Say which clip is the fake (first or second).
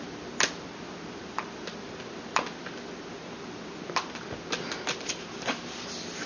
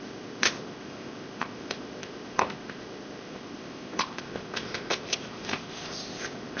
second